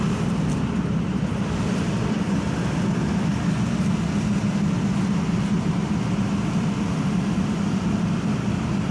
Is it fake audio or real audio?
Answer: real